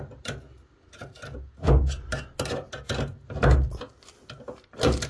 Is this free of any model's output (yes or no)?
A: yes